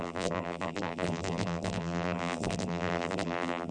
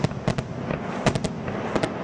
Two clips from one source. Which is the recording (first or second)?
second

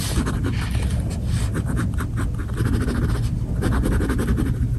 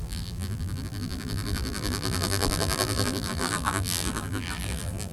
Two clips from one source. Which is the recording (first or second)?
first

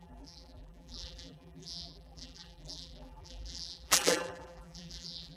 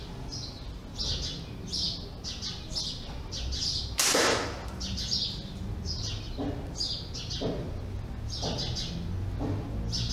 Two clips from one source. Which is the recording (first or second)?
second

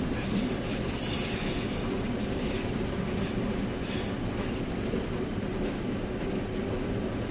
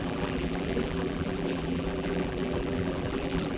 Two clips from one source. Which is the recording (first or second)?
first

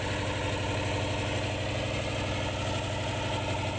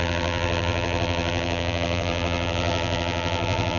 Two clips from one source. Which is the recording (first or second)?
first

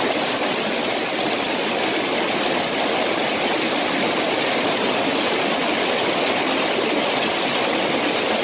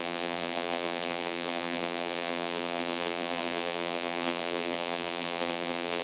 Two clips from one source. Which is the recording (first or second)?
first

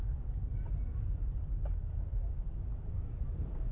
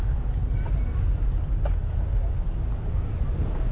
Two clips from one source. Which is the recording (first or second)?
second